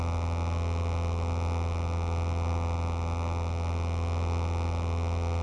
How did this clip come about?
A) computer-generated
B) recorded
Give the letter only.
B